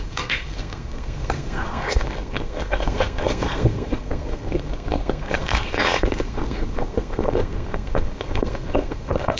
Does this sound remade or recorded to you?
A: remade